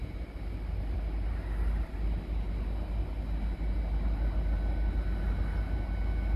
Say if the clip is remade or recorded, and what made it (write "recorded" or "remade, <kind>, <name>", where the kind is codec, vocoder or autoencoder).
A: recorded